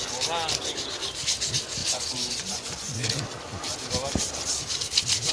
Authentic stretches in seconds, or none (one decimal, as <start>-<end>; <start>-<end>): 0.0-1.8; 3.1-5.3